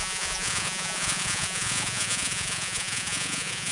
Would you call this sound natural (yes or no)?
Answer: no